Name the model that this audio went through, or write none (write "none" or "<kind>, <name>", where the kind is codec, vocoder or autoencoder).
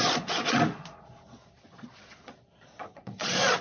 vocoder, Vocos